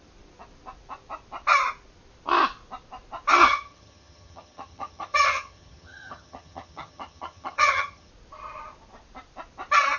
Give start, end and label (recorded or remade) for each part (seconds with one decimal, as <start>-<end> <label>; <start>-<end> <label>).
0.0-3.4 recorded; 3.4-8.1 remade; 8.1-10.0 recorded